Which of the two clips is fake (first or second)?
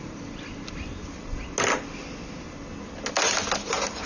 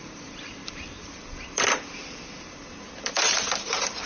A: second